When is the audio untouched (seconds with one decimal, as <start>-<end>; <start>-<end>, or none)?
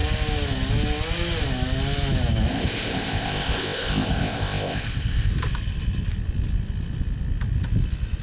0.0-2.5; 5.3-8.2